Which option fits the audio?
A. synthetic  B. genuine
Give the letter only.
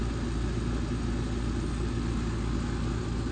B